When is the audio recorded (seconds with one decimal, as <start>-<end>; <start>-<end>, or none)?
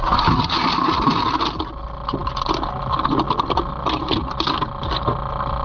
0.0-5.6